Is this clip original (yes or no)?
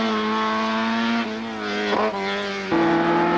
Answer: yes